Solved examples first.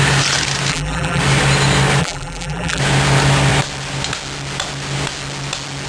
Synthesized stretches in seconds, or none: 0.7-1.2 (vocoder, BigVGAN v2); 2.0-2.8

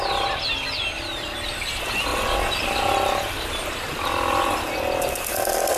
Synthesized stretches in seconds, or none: none

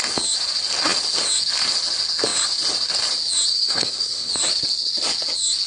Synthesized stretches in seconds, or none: 3.5-4.3 (codec, SNAC)

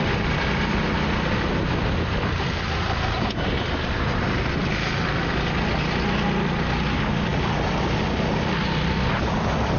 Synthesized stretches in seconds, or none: none

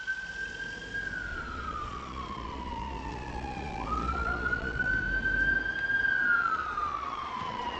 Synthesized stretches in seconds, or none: 1.3-4.9 (vocoder, Vocos); 6.4-7.8